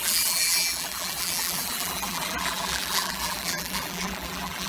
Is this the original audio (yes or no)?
no